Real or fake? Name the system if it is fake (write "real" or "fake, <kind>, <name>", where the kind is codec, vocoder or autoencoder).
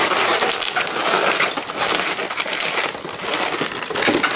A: real